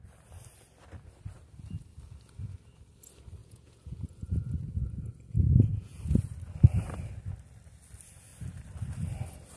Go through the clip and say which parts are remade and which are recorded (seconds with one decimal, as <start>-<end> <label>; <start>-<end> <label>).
0.0-3.4 recorded; 3.4-6.0 remade; 6.0-9.6 recorded